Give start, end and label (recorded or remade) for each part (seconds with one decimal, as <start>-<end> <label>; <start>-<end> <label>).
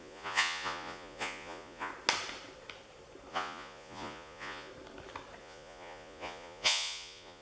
0.0-1.9 remade; 1.9-3.3 recorded; 3.3-4.7 remade; 4.7-5.4 recorded; 5.4-7.4 remade